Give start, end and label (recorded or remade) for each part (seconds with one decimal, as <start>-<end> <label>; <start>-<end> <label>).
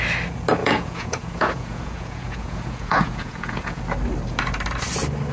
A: 0.0-0.6 recorded; 0.6-3.8 remade; 3.8-5.3 recorded